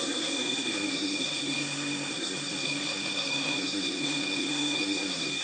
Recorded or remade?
remade